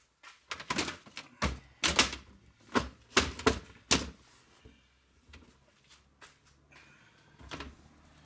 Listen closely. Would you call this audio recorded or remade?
recorded